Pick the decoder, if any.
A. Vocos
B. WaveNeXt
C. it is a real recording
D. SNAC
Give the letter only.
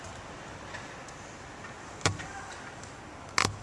C